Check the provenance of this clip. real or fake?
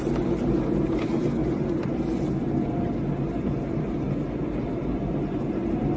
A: real